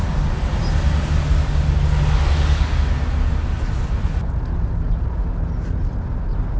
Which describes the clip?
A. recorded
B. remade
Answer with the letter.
A